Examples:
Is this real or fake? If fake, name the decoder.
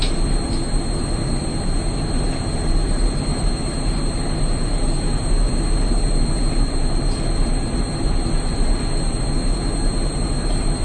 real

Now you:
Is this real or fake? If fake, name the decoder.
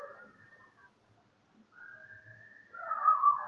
real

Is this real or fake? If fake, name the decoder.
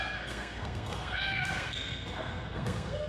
fake, codec, SNAC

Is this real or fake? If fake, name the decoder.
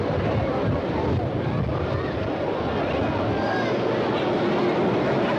real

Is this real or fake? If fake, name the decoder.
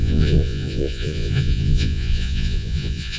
fake, vocoder, Vocos